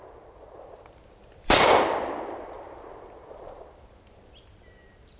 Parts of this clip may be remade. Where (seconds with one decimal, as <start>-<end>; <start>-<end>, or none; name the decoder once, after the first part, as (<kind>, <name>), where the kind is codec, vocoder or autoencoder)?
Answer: 1.2-1.8 (vocoder, BigVGAN v2)